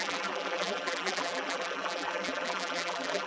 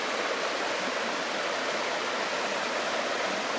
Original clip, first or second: second